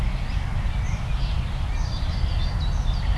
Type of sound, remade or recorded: recorded